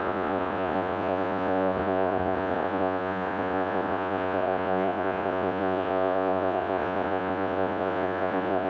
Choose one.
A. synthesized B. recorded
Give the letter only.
A